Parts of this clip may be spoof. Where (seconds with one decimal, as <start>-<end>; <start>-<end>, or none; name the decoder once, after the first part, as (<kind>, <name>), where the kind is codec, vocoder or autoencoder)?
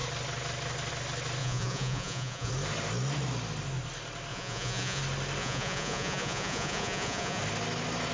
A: 1.4-2.5 (vocoder, Vocos); 4.3-5.0; 5.4-7.4